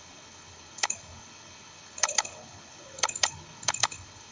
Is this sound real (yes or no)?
no